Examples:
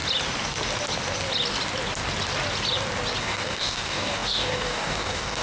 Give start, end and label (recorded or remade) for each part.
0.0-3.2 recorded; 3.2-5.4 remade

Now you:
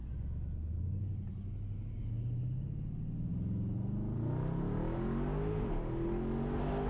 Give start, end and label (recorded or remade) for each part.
0.0-6.9 recorded

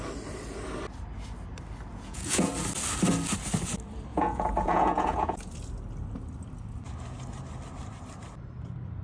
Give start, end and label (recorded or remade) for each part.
0.0-1.9 recorded; 1.9-2.5 remade; 2.5-4.1 recorded; 4.1-5.5 remade; 5.5-9.0 recorded

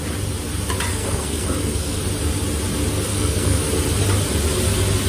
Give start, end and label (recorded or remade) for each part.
0.0-0.9 recorded; 0.9-2.0 remade; 2.0-3.1 recorded; 3.1-3.6 remade; 3.6-5.1 recorded

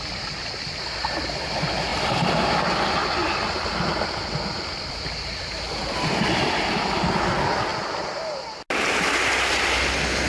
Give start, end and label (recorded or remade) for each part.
0.0-1.9 recorded; 1.9-2.6 remade; 2.6-10.3 recorded

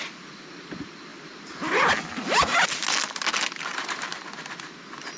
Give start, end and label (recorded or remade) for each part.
0.0-3.7 recorded; 3.7-4.3 remade; 4.3-5.2 recorded